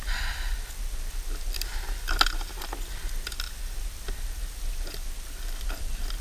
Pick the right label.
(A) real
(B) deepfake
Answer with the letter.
A